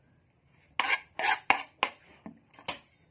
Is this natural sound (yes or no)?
yes